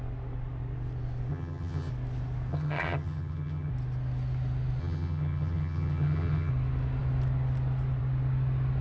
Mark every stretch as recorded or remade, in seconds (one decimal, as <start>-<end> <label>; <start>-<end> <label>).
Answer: 0.0-1.3 recorded; 1.3-1.9 remade; 1.9-2.5 recorded; 2.5-3.7 remade; 3.7-4.8 recorded; 4.8-6.5 remade; 6.5-8.8 recorded